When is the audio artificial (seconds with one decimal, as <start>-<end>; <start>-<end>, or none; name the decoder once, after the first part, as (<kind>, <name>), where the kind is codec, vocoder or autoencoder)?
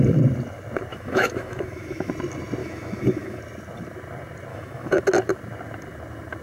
0.9-2.1 (autoencoder, DAC-VAE); 2.6-3.4; 4.5-5.0